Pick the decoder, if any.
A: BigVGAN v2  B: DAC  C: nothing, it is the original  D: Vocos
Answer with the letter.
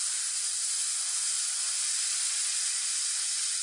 C